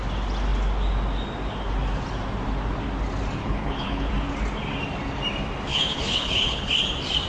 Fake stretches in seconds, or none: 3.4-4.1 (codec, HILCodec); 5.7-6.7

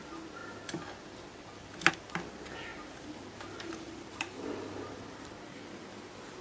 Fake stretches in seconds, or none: 0.0-0.4 (vocoder, BigVGAN v2); 1.9-2.7; 3.9-6.4

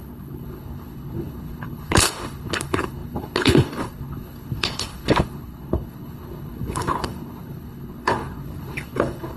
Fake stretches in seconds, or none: 0.0-9.4 (codec, HILCodec)

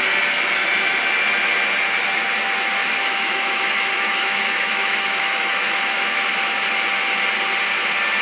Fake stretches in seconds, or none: 2.8-6.2 (autoencoder, DAC-VAE)

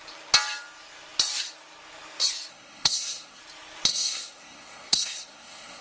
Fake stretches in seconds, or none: 2.5-3.4 (codec, SNAC); 3.9-5.8

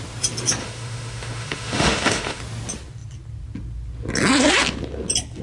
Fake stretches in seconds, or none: 0.6-2.4 (autoencoder, DAC-VAE)

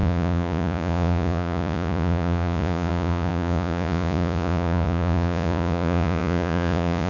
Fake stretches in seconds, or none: 0.0-7.1 (vocoder, Vocos)

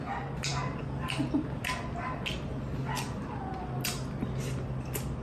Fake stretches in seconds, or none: none